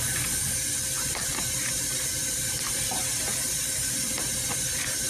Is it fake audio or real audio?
real